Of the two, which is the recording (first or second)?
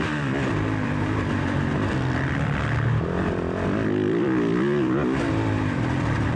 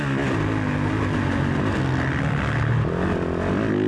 second